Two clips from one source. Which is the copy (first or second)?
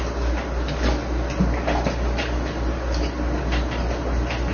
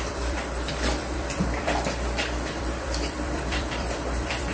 second